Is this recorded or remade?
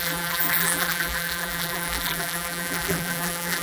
remade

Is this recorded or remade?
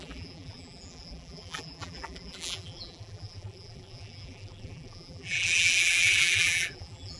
remade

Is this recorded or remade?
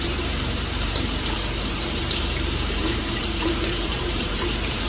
remade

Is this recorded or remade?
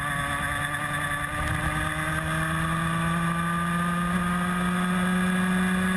recorded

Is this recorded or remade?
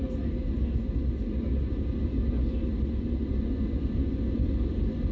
recorded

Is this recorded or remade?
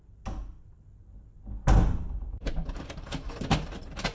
recorded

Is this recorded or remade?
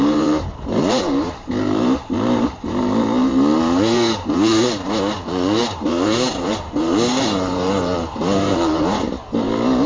remade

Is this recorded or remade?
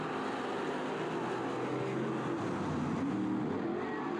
recorded